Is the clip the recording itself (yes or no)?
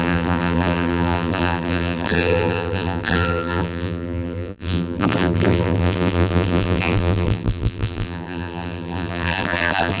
no